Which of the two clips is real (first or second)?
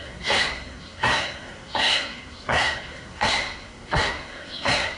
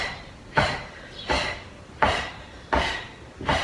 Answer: second